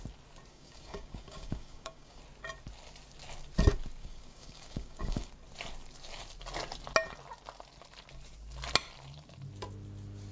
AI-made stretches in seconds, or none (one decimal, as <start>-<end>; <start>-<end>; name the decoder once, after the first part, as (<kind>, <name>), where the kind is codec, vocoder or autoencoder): 0.5-2.2 (codec, DAC); 4.0-5.3